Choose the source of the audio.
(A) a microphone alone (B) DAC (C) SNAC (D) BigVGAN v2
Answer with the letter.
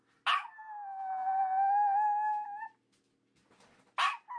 A